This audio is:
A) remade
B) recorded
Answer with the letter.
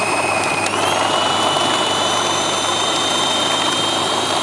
A